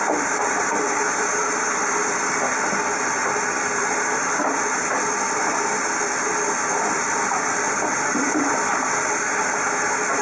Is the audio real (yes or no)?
no